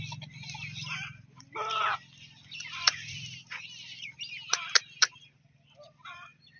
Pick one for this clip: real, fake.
fake